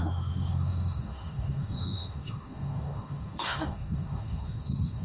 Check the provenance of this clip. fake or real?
fake